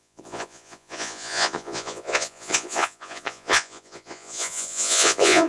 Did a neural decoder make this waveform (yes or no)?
yes